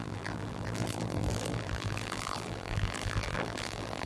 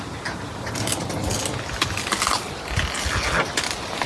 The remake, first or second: first